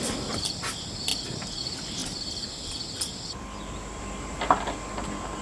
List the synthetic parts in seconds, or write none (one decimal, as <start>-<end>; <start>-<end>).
2.0-2.7; 4.3-4.8